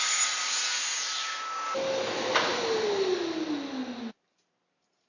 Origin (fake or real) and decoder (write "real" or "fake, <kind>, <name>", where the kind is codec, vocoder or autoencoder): real